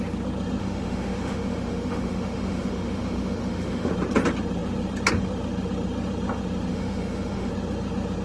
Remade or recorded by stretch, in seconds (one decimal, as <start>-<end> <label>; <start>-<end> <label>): 0.0-0.6 recorded; 0.6-3.9 remade; 3.9-6.7 recorded; 6.7-7.5 remade; 7.5-8.2 recorded